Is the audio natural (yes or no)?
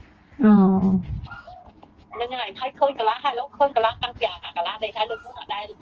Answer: yes